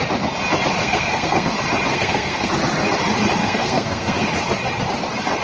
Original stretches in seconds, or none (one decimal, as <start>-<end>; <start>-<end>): 0.0-0.8; 1.5-1.9; 2.5-3.4; 4.3-5.4